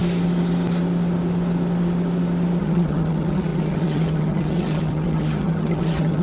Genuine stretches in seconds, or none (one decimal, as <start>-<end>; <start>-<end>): 0.0-2.6